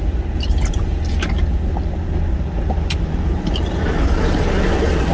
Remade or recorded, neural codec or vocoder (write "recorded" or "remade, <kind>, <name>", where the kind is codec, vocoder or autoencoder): recorded